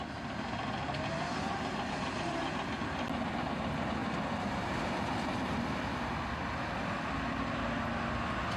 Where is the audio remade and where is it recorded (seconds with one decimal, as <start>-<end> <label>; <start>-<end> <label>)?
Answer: 0.0-4.0 recorded; 4.0-5.6 remade; 5.6-8.6 recorded